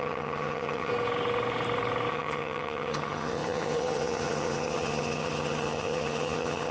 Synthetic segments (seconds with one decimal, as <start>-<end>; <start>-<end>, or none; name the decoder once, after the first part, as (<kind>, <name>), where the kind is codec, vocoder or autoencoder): 0.0-0.9 (vocoder, HiFi-GAN); 2.1-6.7